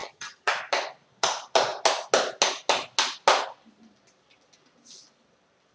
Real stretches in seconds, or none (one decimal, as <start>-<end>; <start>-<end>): 0.5-5.7